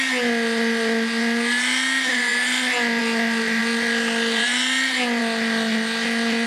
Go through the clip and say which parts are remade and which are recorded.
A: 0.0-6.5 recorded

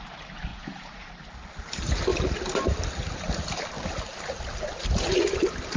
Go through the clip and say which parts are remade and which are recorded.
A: 0.0-0.5 recorded; 0.5-1.1 remade; 1.1-5.8 recorded

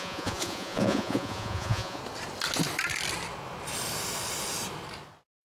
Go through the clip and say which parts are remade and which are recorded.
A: 0.0-2.0 remade; 2.0-5.4 recorded

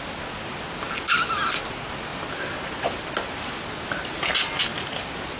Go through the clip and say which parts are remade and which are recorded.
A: 0.0-5.4 recorded

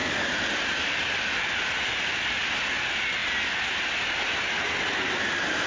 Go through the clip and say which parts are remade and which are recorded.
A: 0.0-5.7 recorded

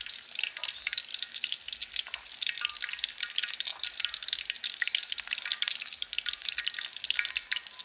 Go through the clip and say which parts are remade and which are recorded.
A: 0.0-7.8 recorded

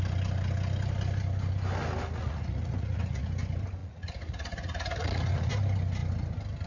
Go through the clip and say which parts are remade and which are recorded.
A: 0.0-2.2 recorded; 2.2-3.3 remade; 3.3-3.8 recorded; 3.8-5.5 remade; 5.5-6.7 recorded